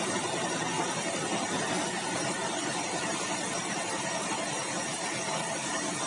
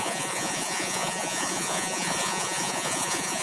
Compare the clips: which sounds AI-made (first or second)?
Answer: second